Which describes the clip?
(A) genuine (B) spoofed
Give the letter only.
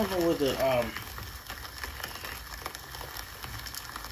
A